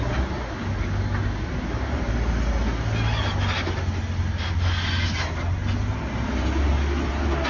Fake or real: real